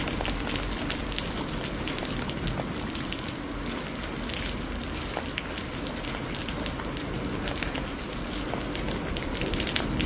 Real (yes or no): yes